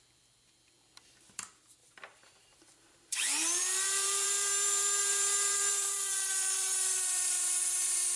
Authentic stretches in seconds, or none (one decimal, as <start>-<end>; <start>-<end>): 0.0-1.8; 6.1-8.2